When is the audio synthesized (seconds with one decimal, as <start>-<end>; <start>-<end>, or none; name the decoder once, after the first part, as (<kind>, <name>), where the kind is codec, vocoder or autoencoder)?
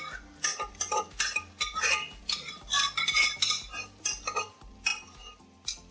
none